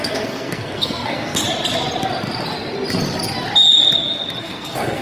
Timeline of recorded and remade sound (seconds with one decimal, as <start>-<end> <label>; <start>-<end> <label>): 0.0-1.4 remade; 1.4-4.4 recorded; 4.4-5.0 remade